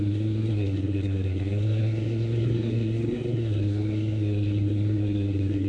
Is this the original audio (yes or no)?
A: no